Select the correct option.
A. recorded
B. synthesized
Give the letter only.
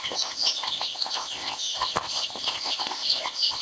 B